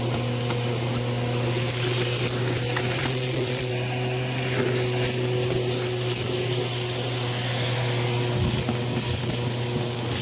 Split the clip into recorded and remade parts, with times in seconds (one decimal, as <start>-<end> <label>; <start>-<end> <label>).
0.0-3.0 recorded; 3.0-3.7 remade; 3.7-10.2 recorded